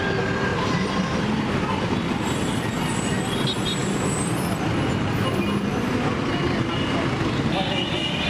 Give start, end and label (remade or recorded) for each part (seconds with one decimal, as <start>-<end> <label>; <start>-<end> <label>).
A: 0.0-0.5 recorded; 0.5-2.5 remade; 2.5-3.8 recorded; 3.8-4.5 remade; 4.5-8.3 recorded